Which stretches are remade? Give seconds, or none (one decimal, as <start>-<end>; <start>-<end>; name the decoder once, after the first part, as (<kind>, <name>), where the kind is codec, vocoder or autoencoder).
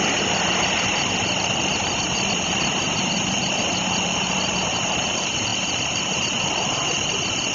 none